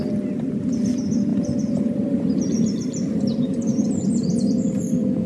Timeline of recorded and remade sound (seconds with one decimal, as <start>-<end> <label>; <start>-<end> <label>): 0.0-1.3 recorded; 1.3-4.5 remade; 4.5-5.3 recorded